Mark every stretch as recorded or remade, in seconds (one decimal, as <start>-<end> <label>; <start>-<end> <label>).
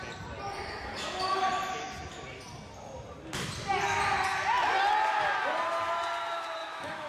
0.0-6.6 recorded; 6.6-7.1 remade